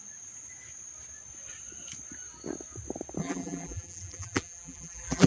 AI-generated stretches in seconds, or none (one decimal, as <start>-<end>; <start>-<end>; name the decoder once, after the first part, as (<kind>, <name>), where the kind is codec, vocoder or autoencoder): 3.2-5.3 (vocoder, BigVGAN v2)